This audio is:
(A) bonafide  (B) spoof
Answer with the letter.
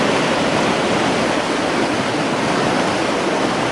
A